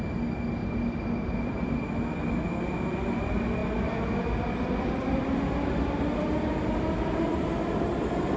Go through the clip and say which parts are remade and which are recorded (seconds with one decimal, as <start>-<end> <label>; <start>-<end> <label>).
0.0-8.4 recorded